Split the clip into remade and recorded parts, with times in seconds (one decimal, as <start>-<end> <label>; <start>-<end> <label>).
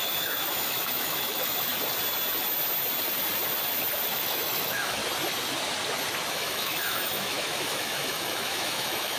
0.0-1.7 remade; 1.7-4.1 recorded; 4.1-5.0 remade; 5.0-6.3 recorded; 6.3-9.2 remade